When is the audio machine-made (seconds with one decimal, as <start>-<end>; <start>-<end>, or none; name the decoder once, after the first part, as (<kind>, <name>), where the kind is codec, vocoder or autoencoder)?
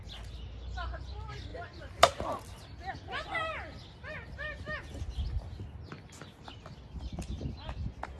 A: none